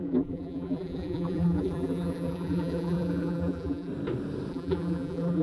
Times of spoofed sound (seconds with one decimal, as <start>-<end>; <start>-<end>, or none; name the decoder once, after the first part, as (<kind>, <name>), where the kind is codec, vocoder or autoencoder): 0.0-3.9 (vocoder, BigVGAN v2); 4.5-5.4